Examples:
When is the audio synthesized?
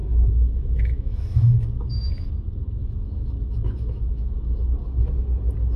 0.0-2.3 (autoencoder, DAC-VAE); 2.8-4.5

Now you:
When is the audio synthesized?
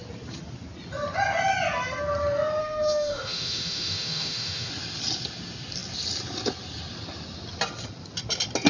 2.6-4.7 (autoencoder, DAC-VAE)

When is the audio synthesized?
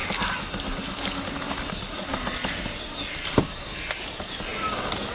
none